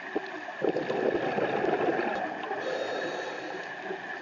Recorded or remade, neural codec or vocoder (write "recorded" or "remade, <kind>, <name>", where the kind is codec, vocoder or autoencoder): recorded